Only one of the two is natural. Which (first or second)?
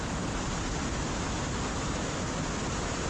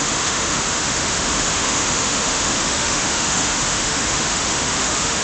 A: first